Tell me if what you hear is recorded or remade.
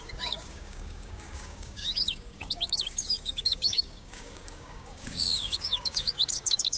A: remade